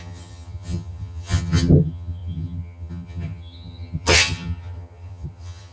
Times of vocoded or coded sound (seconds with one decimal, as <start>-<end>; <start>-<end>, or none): 0.0-5.7